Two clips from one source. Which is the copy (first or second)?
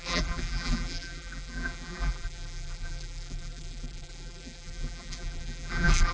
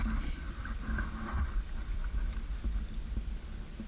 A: first